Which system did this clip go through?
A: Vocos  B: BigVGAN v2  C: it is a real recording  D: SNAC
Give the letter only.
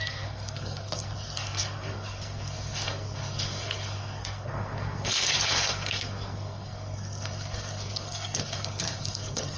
D